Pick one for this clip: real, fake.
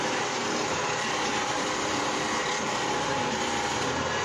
real